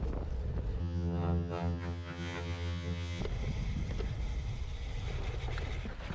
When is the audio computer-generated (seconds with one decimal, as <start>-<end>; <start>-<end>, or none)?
0.8-3.2